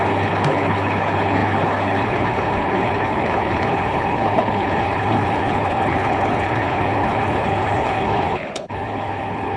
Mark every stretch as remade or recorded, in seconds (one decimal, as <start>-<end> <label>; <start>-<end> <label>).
0.0-9.6 remade